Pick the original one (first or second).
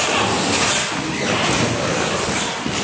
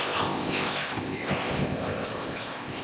first